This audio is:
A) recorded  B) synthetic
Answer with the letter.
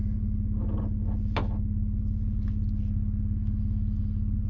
A